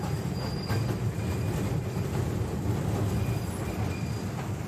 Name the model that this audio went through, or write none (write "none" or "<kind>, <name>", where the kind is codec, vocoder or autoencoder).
none